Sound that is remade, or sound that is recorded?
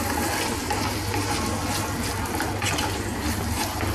recorded